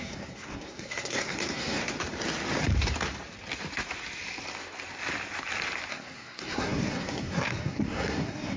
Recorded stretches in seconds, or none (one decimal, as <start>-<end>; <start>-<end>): 1.8-5.9